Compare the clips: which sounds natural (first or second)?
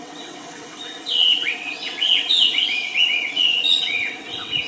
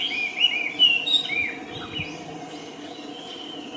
second